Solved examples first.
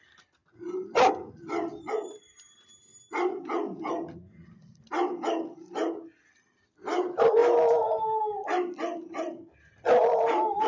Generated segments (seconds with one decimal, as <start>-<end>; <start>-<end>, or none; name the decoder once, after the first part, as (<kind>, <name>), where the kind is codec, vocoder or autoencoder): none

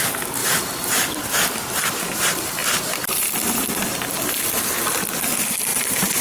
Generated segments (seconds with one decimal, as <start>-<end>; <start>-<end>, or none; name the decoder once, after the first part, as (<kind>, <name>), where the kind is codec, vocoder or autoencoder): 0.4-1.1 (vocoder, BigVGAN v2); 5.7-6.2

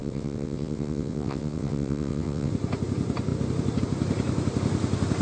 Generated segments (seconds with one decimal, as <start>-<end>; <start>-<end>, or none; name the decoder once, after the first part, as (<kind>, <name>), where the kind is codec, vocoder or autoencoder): 0.0-2.5 (vocoder, WaveNeXt)

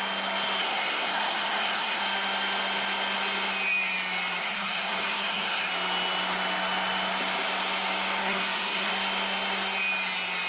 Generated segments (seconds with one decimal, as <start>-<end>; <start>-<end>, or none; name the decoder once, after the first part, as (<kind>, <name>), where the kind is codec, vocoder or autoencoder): 0.6-2.0 (codec, SNAC); 4.4-5.7; 8.2-8.9

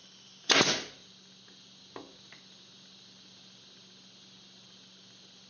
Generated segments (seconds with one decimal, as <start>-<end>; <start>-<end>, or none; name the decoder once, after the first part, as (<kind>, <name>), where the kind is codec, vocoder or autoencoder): none

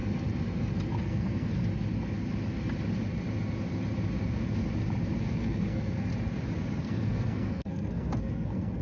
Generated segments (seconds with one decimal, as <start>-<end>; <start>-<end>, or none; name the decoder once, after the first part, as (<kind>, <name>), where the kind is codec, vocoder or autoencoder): 1.0-1.6 (codec, SNAC); 5.2-6.1; 6.8-8.8

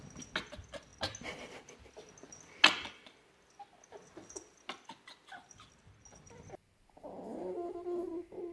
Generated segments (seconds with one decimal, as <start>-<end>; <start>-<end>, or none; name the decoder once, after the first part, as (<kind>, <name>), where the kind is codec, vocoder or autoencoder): none